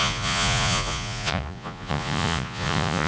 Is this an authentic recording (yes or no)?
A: no